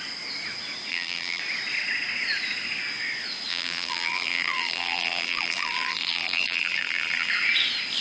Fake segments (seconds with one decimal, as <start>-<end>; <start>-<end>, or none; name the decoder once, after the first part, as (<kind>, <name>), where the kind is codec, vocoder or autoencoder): 0.9-1.4 (vocoder, BigVGAN v2); 3.5-7.3